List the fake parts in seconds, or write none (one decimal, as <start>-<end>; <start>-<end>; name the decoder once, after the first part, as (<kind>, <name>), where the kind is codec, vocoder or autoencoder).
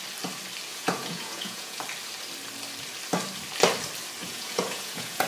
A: 0.7-1.8 (vocoder, Vocos); 4.2-5.3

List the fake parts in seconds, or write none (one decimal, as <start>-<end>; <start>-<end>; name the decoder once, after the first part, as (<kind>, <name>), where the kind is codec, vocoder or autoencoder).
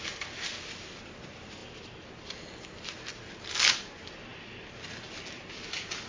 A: none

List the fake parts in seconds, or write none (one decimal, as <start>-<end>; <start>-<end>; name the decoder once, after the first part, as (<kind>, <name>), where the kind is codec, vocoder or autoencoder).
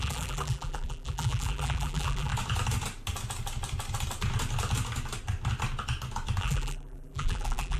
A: 0.0-2.3 (vocoder, BigVGAN v2); 6.4-7.8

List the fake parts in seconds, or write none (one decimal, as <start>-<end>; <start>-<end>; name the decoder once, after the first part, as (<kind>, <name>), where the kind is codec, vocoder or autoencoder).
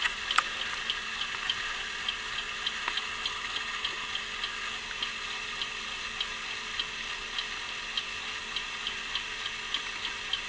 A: none